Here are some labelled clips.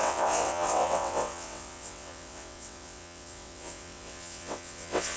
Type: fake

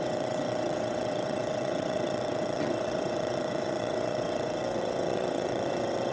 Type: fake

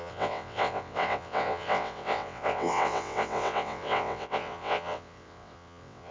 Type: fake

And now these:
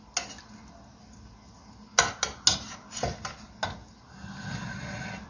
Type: real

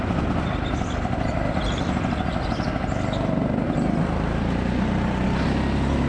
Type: real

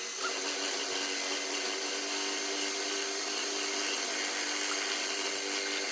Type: real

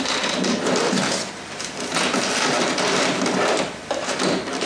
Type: real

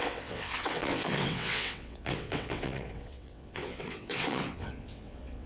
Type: fake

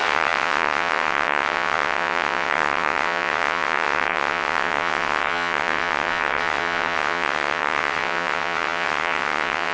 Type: fake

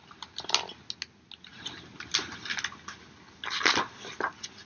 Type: real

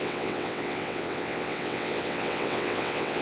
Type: fake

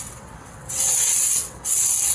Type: fake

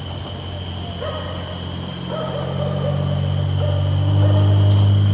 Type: real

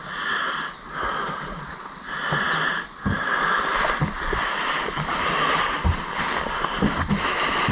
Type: real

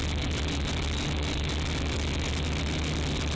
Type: real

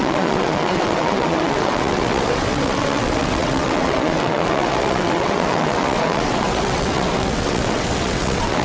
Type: fake